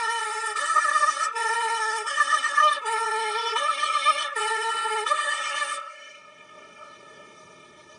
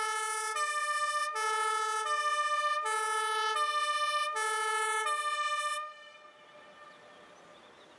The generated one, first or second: first